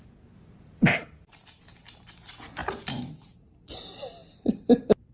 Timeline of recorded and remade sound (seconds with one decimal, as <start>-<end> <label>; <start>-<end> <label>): 0.0-0.9 recorded; 0.9-1.6 remade; 1.6-2.6 recorded; 2.6-3.7 remade; 3.7-5.1 recorded